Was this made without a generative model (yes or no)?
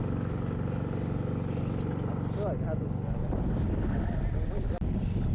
yes